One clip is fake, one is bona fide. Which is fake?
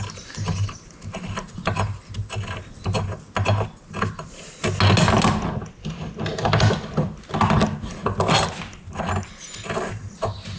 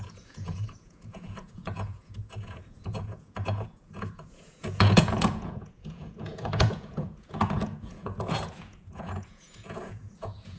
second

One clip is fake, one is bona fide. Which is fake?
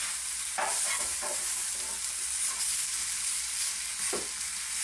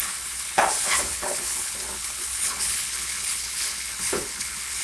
second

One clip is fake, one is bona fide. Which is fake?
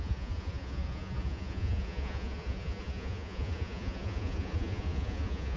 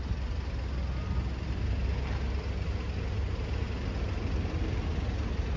first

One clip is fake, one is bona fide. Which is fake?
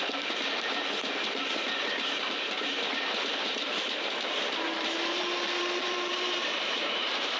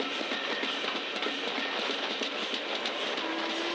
first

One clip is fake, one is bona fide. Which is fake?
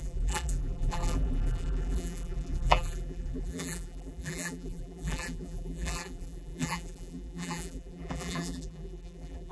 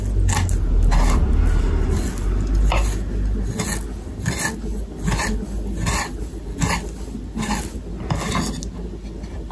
first